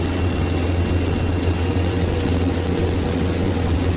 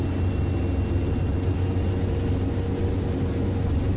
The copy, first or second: first